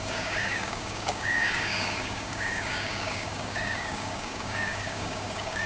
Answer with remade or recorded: remade